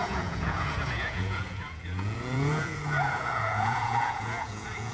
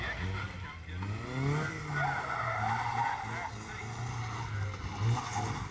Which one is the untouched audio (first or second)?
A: second